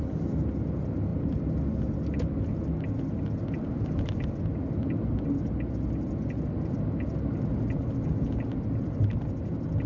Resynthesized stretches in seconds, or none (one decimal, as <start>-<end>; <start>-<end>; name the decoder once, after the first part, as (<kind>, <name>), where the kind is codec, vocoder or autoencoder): none